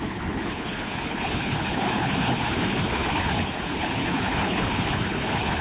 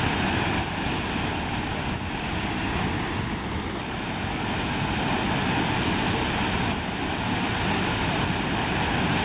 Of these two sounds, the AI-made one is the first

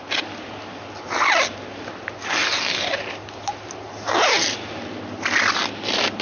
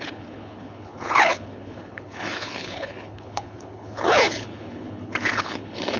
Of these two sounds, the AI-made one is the second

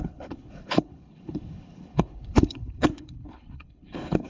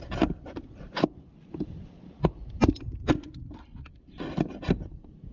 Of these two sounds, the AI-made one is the first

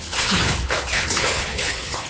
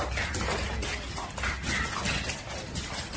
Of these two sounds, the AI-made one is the first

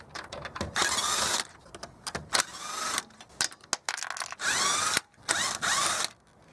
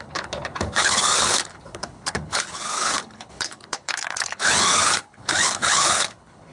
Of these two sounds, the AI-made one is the second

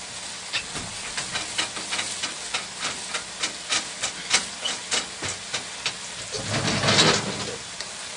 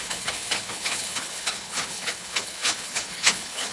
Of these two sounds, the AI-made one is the second